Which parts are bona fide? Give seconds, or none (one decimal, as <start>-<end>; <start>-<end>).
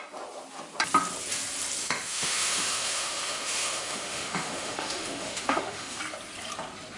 0.0-1.8; 6.0-7.0